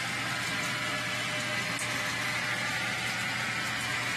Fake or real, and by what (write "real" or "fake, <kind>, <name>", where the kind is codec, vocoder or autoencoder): real